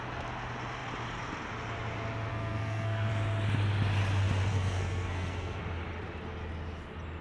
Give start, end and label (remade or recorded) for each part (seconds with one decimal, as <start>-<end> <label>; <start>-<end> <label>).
0.0-2.3 recorded; 2.3-3.1 remade; 3.1-4.5 recorded; 4.5-5.6 remade; 5.6-7.2 recorded